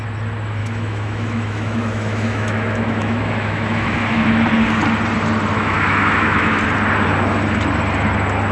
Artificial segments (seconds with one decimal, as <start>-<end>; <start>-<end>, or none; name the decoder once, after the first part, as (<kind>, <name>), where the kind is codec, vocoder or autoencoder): 0.6-4.4 (autoencoder, DAC-VAE); 5.5-6.6